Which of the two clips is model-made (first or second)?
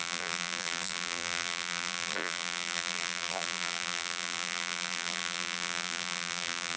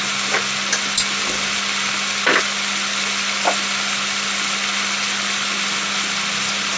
first